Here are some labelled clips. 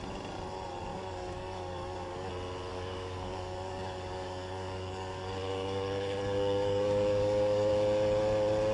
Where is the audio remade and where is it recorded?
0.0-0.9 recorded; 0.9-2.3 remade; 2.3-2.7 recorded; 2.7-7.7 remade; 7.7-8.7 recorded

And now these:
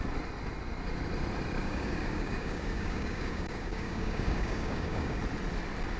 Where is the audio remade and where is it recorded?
0.0-1.6 recorded; 1.6-5.2 remade; 5.2-6.0 recorded

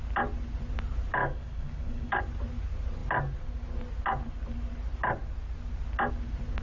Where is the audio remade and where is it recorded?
0.0-1.2 recorded; 1.2-2.2 remade; 2.2-6.6 recorded

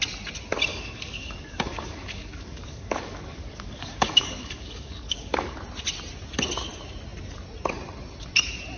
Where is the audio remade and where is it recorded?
0.0-0.7 recorded; 0.7-5.6 remade; 5.6-8.8 recorded

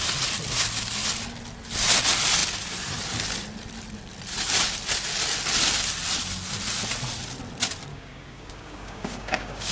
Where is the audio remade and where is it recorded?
0.0-7.9 recorded; 7.9-9.7 remade

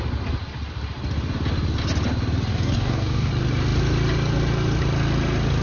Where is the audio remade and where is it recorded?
0.0-2.5 recorded; 2.5-3.3 remade; 3.3-5.6 recorded

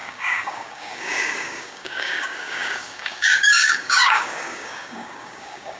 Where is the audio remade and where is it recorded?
0.0-5.8 remade

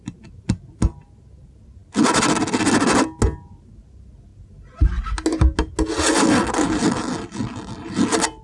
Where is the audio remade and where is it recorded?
0.0-8.4 recorded